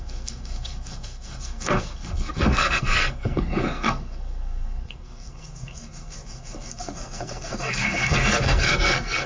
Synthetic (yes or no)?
yes